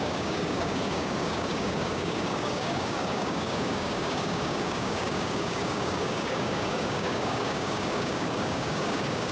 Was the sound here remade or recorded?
remade